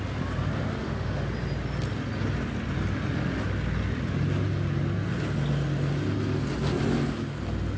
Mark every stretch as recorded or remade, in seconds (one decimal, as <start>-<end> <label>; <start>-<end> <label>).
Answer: 0.0-0.7 recorded; 0.7-1.3 remade; 1.3-7.8 recorded